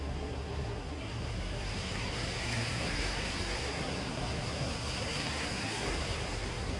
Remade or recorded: remade